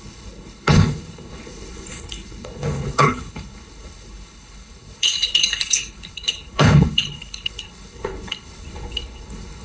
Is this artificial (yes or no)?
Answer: yes